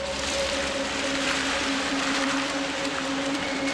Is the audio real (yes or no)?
no